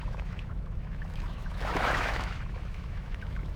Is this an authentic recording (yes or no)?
no